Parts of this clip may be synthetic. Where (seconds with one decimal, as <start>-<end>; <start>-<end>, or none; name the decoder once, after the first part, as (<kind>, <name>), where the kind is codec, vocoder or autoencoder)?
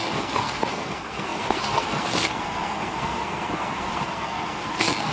0.0-5.1 (codec, SNAC)